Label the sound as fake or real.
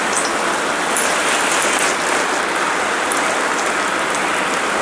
real